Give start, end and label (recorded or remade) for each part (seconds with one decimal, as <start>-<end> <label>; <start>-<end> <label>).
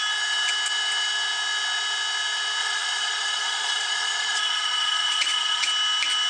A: 0.0-2.6 recorded; 2.6-5.7 remade; 5.7-6.3 recorded